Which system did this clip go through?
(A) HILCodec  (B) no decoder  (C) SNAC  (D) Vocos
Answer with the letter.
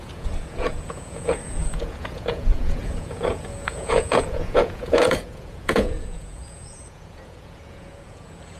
D